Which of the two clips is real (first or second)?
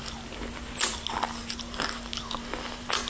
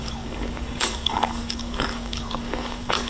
first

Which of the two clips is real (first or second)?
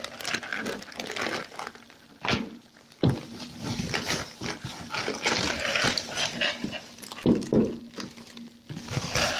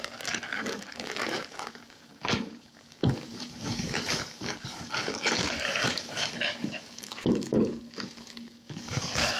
first